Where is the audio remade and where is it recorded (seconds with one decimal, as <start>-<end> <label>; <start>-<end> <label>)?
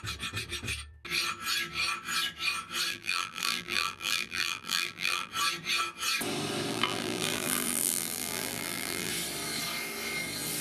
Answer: 0.0-2.9 recorded; 2.9-5.3 remade; 5.3-6.7 recorded; 6.7-9.1 remade; 9.1-10.6 recorded